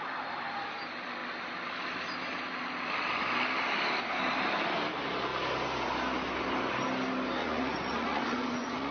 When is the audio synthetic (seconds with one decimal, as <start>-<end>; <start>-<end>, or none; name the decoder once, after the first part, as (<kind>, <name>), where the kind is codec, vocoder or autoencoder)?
7.4-8.9 (vocoder, Vocos)